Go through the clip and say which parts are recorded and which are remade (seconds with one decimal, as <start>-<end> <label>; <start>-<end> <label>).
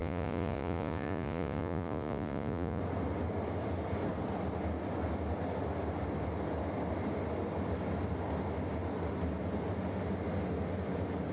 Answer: 0.0-2.8 remade; 2.8-11.3 recorded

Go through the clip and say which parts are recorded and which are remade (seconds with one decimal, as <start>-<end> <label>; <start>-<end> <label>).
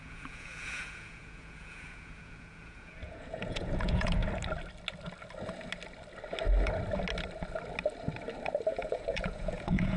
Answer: 0.0-4.2 remade; 4.2-8.7 recorded; 8.7-10.0 remade